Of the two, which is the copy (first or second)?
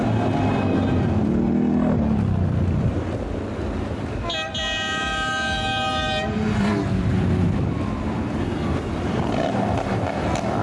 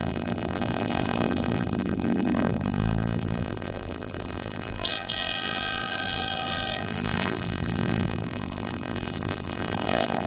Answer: second